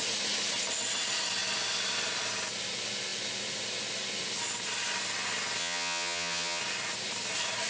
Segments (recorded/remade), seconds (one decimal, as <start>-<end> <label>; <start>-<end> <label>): 0.0-5.6 recorded; 5.6-6.6 remade; 6.6-7.7 recorded